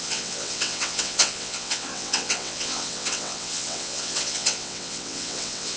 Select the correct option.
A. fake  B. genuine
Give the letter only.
A